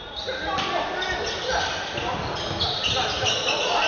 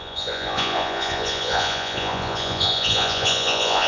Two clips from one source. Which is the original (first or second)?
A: first